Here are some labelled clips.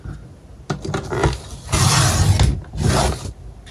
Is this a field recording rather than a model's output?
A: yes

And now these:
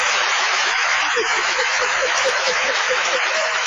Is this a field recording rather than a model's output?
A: no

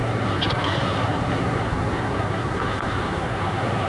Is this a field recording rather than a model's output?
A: no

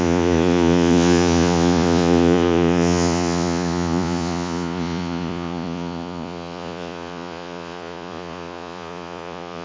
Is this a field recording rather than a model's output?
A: no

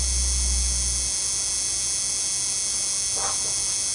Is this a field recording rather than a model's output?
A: yes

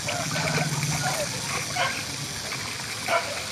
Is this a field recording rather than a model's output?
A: yes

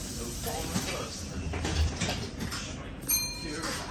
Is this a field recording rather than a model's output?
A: no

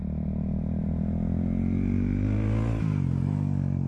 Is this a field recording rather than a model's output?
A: yes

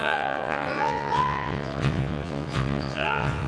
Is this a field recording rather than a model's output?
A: no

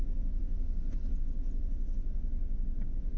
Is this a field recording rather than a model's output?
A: yes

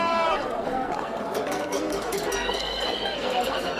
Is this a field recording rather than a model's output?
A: no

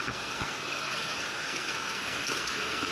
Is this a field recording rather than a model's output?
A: no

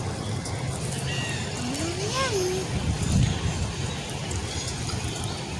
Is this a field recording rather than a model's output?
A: yes